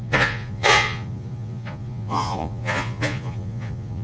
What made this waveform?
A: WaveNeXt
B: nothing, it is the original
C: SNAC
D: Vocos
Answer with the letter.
D